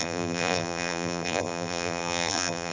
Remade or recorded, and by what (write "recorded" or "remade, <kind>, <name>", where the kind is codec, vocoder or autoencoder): remade, vocoder, BigVGAN v2